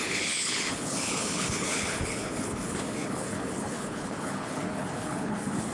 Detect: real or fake fake